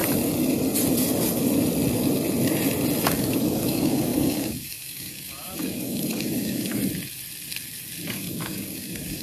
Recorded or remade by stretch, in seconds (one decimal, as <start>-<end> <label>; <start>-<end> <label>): 0.0-3.1 recorded; 3.1-6.8 remade; 6.8-8.1 recorded; 8.1-9.2 remade